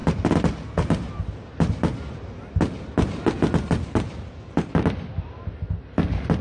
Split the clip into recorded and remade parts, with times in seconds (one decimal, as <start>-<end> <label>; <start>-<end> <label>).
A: 0.0-6.4 recorded